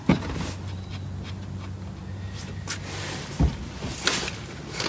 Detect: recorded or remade recorded